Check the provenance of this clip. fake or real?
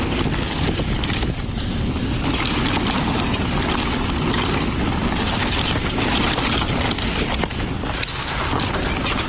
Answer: real